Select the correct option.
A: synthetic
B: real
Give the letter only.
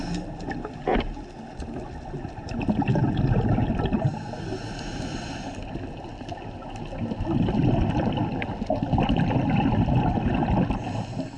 B